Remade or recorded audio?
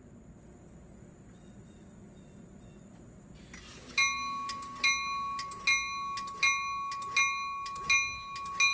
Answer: recorded